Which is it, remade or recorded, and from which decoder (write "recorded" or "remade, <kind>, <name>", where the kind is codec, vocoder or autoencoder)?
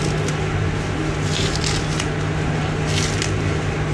recorded